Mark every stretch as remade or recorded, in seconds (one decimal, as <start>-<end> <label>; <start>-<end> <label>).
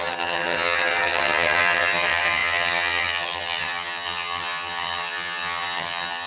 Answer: 0.0-6.3 remade